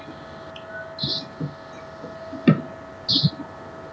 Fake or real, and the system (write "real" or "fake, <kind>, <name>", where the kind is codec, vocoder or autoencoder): real